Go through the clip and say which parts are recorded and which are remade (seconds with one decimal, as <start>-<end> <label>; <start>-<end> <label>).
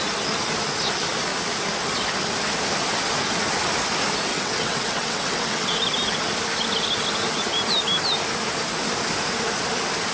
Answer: 0.0-4.3 recorded; 4.3-5.8 remade; 5.8-10.1 recorded